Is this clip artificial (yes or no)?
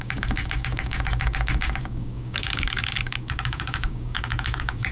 yes